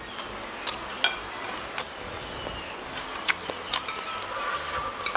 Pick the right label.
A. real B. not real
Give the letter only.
A